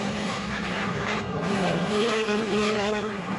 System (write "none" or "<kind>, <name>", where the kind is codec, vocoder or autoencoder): codec, SNAC